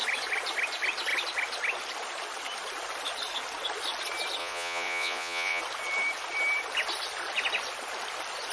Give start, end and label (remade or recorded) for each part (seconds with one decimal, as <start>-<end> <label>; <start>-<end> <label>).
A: 0.0-4.4 recorded; 4.4-5.6 remade; 5.6-8.5 recorded